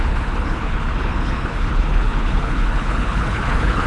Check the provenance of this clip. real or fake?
fake